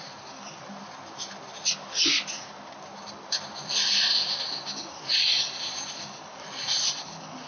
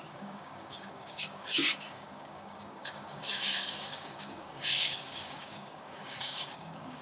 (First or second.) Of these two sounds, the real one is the first